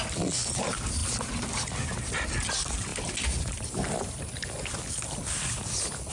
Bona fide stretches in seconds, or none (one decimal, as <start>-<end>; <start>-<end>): 0.0-6.1